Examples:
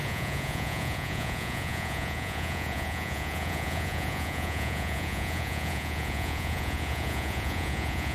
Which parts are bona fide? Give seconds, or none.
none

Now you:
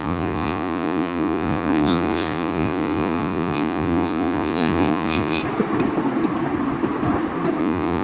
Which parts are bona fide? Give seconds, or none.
5.4-7.6

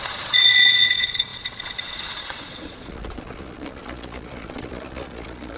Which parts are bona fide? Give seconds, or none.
none